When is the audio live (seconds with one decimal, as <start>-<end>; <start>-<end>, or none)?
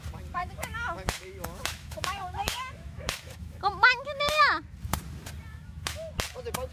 0.0-0.4; 4.4-5.5; 6.1-6.7